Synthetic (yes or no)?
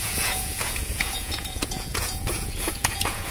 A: yes